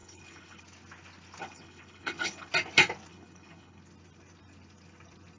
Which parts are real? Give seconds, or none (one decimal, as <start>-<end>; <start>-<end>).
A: 0.6-1.4; 2.5-3.1; 3.8-5.4